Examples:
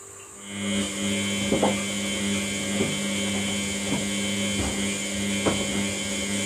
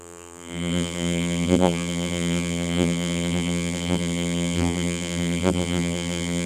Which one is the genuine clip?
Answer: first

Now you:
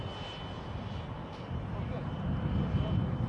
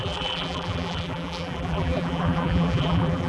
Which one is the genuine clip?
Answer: first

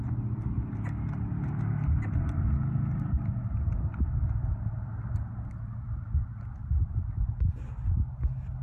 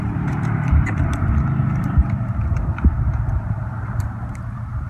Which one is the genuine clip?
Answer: first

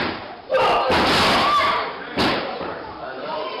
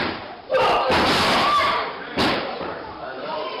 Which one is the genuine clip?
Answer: first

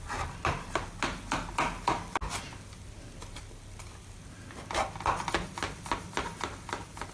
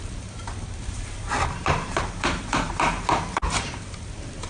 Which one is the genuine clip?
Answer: first